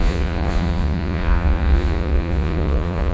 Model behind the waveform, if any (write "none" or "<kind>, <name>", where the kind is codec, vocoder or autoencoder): vocoder, Vocos